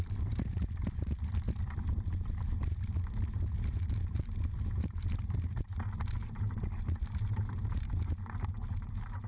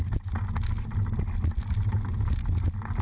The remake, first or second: first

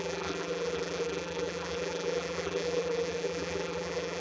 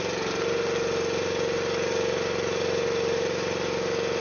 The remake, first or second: first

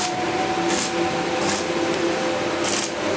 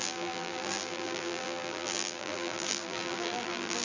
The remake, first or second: second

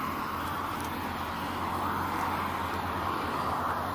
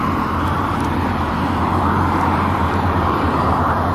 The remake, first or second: second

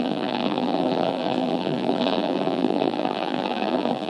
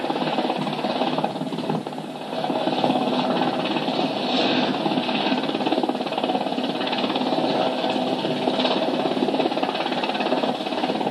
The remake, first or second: first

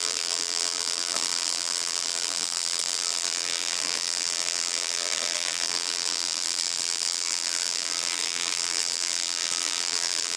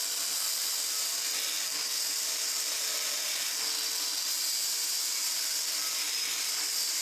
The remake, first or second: first